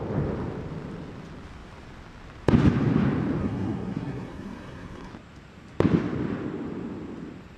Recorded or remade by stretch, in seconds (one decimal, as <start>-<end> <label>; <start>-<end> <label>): 0.0-3.4 recorded; 3.4-5.1 remade; 5.1-7.6 recorded